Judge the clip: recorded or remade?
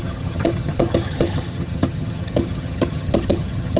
remade